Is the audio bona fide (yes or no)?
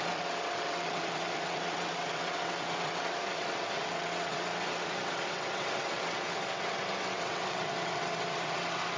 no